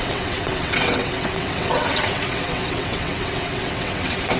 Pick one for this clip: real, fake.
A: fake